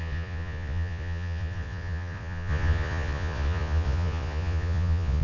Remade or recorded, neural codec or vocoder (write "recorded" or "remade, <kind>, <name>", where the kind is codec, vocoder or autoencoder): remade, vocoder, Vocos